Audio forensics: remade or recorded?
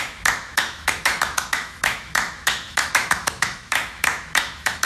remade